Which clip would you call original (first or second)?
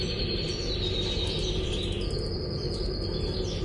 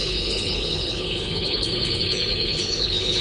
first